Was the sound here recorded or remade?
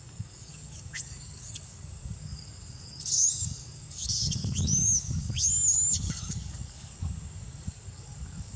remade